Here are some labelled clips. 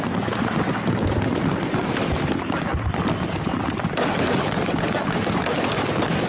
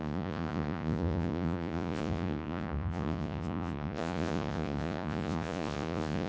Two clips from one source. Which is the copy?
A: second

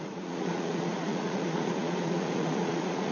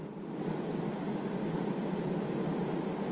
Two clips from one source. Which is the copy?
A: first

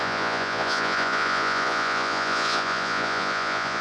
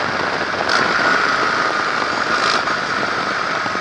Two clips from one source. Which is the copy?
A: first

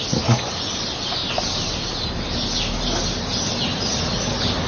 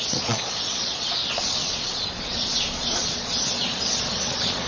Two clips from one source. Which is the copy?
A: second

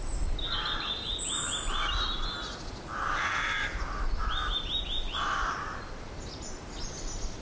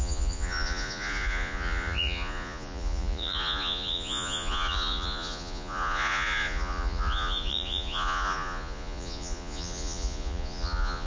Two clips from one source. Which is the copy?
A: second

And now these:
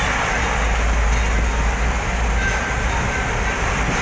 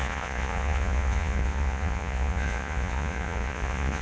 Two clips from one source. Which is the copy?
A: second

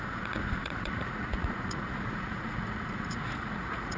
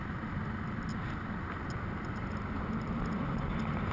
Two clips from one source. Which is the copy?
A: first